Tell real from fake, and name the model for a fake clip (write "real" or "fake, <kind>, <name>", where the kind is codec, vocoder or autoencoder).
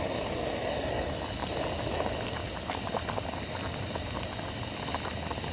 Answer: real